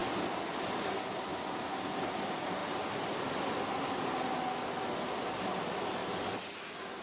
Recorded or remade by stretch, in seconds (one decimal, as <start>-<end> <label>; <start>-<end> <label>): 0.0-7.0 recorded